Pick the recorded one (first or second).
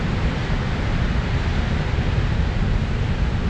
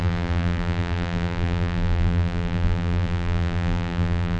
first